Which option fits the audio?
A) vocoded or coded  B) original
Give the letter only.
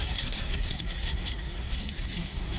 A